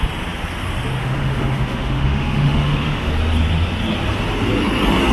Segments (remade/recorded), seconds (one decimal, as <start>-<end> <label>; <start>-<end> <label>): 0.0-1.0 recorded; 1.0-3.1 remade; 3.1-5.1 recorded